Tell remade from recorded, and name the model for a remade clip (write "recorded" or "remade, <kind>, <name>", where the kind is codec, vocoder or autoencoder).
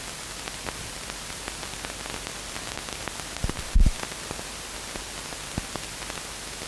recorded